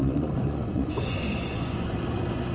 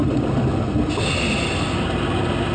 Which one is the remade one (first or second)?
first